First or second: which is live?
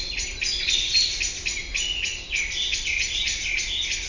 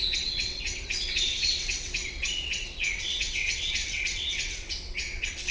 first